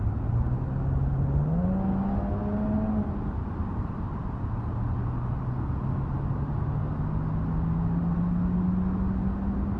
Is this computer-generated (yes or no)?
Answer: no